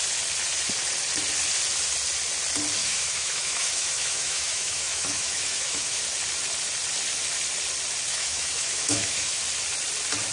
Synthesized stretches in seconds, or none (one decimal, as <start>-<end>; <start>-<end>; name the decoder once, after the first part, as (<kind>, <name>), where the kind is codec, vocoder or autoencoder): 2.8-6.0 (autoencoder, DAC-VAE); 8.1-9.4